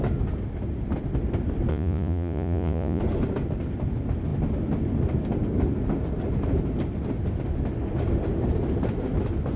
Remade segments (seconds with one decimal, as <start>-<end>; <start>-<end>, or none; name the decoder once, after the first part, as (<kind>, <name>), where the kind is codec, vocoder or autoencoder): 1.7-3.0 (vocoder, Vocos)